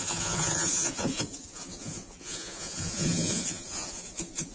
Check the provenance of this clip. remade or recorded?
remade